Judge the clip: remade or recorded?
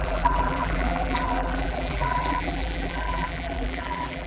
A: remade